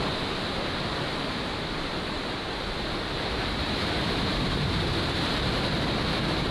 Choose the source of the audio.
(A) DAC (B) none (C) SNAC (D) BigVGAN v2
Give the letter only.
D